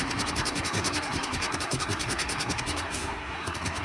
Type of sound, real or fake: fake